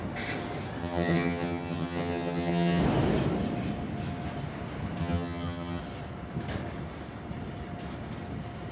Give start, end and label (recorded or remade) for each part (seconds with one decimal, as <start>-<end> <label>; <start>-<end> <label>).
0.0-0.8 recorded; 0.8-2.8 remade; 2.8-5.0 recorded; 5.0-5.8 remade; 5.8-8.7 recorded